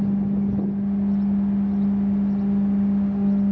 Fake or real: real